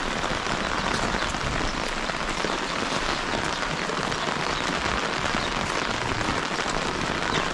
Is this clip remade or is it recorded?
recorded